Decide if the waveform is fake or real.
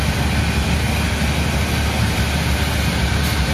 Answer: real